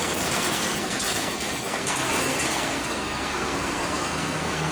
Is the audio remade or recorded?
remade